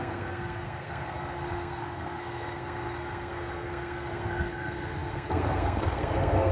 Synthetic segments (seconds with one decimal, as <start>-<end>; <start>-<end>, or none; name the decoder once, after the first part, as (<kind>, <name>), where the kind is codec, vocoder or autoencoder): 0.0-6.5 (codec, SNAC)